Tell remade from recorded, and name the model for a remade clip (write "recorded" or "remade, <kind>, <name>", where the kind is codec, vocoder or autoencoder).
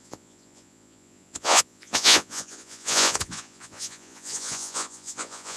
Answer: remade, vocoder, Vocos